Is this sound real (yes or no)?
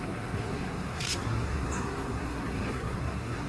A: no